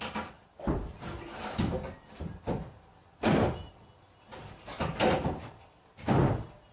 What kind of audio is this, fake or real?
real